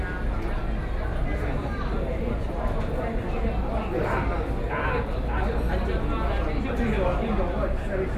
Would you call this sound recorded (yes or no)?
yes